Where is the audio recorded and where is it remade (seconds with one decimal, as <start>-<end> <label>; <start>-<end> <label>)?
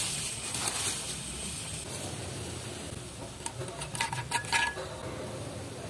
0.0-5.9 recorded